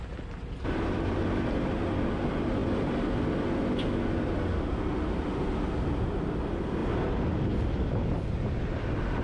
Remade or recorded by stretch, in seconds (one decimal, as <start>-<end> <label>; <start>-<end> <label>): 0.0-9.2 recorded